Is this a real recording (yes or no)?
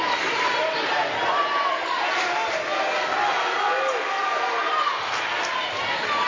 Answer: yes